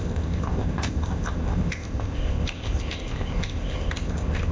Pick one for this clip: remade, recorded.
remade